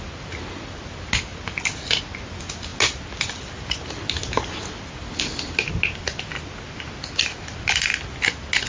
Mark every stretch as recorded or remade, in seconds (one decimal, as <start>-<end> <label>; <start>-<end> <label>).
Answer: 0.0-8.7 recorded